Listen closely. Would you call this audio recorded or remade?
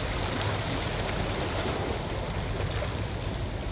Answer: recorded